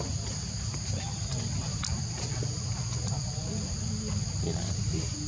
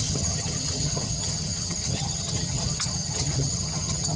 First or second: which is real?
first